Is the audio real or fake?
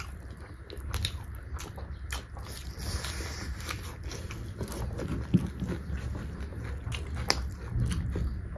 real